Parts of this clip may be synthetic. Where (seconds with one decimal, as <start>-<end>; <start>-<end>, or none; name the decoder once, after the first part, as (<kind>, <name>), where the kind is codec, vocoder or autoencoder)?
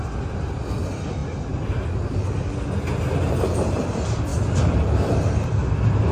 none